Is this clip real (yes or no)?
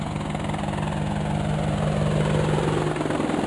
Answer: yes